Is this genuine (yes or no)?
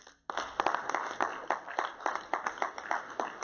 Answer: yes